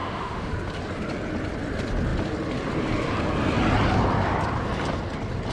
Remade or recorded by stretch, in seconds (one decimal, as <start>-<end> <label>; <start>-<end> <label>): 0.0-0.5 remade; 0.5-5.5 recorded